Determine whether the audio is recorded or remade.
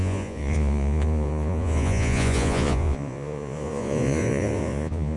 remade